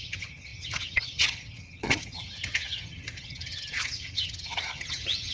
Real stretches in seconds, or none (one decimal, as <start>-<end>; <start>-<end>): none